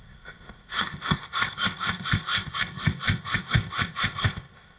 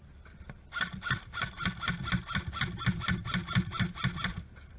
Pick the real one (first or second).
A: second